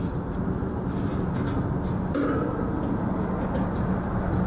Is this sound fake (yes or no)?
no